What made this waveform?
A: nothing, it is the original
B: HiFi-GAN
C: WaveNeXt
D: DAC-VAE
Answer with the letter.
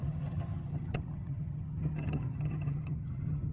B